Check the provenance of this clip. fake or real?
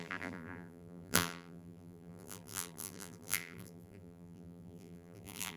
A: fake